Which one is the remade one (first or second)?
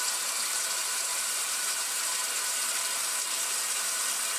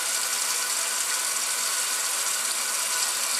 first